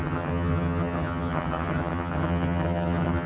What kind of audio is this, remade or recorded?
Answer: remade